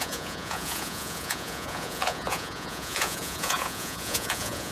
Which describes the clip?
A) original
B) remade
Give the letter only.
B